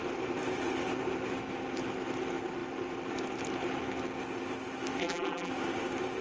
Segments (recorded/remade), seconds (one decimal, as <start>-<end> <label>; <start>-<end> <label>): 0.0-5.0 recorded; 5.0-5.5 remade; 5.5-6.2 recorded

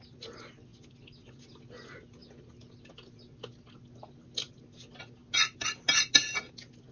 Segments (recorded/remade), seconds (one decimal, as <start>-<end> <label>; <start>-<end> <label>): 0.0-6.9 recorded

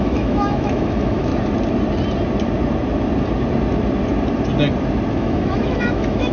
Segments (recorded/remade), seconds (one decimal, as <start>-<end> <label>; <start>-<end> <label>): 0.0-1.3 remade; 1.3-5.1 recorded; 5.1-6.3 remade